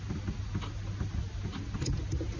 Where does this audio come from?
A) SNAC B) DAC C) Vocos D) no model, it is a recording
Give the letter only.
D